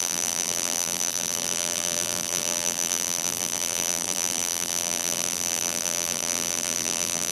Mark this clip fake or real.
fake